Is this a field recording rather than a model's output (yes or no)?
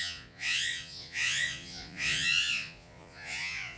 no